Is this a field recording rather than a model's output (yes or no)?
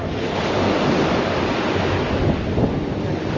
yes